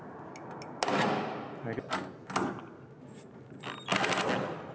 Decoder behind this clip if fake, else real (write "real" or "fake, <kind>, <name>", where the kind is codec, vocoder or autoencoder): real